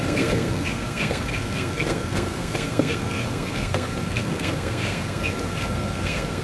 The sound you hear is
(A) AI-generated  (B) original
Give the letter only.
A